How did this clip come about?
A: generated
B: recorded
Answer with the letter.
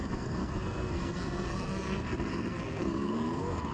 A